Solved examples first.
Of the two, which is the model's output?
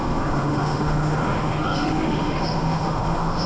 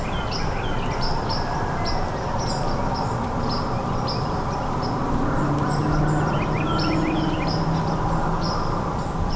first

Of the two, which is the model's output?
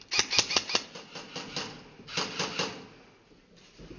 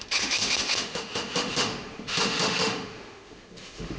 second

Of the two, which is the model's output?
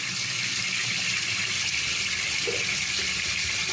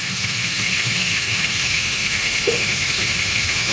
second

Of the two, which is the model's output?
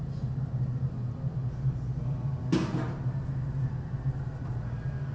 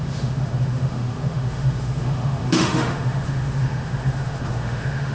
second